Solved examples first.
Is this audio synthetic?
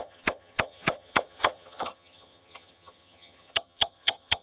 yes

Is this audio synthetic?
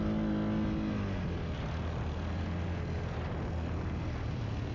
no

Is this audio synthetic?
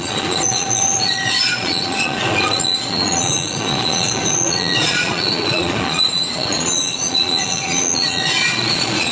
yes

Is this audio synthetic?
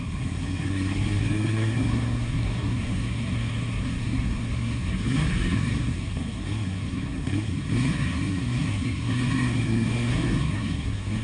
yes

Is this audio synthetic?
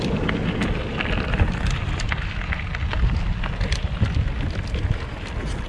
no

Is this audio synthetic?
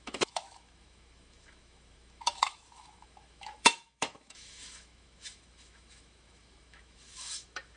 yes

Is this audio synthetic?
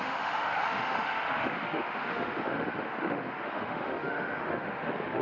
yes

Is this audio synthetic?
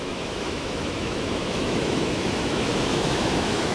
yes